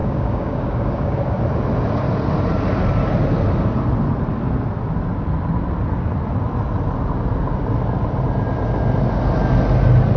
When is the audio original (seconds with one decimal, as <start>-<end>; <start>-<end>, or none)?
1.4-10.2